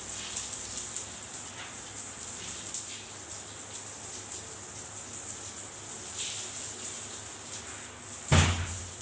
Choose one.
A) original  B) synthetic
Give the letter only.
A